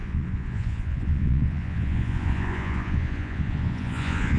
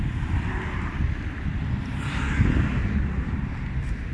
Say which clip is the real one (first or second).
second